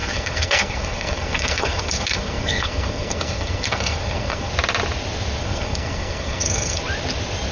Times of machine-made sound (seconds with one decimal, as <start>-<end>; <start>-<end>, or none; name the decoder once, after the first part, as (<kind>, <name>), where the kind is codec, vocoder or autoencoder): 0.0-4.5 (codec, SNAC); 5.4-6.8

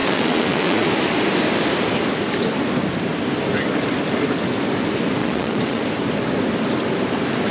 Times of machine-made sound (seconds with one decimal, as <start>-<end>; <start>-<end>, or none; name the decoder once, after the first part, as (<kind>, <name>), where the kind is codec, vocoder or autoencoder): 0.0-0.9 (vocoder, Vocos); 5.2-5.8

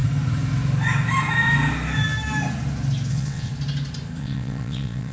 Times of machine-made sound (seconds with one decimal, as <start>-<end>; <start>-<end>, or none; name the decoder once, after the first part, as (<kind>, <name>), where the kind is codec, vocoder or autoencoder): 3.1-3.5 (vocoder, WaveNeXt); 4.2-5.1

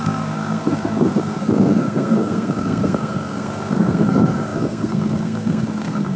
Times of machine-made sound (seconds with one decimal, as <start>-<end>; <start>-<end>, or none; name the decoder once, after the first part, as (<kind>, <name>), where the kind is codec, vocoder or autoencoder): 0.0-6.2 (codec, SNAC)

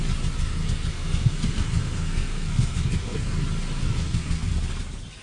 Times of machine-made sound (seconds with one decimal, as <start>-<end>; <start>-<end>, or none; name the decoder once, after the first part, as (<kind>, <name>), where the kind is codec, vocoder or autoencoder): 0.4-3.4 (codec, SNAC); 3.8-4.5